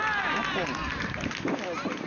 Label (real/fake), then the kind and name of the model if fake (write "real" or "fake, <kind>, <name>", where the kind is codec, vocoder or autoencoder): real